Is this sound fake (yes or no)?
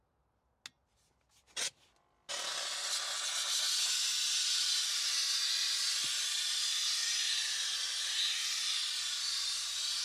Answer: no